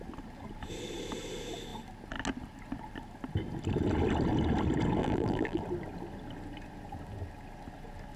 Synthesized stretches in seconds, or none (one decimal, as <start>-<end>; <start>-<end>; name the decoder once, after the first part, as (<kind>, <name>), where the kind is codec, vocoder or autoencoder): 5.0-5.6 (vocoder, BigVGAN v2)